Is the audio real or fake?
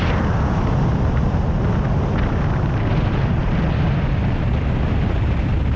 real